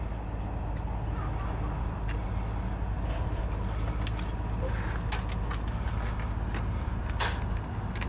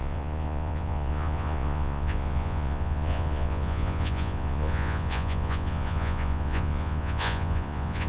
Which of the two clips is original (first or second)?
first